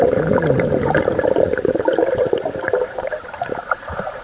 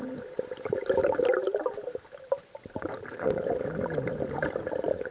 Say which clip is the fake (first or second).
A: first